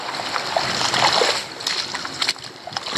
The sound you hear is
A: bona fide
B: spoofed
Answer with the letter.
A